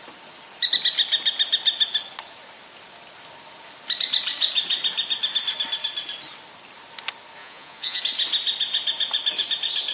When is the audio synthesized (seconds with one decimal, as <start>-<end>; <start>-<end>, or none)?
7.4-8.0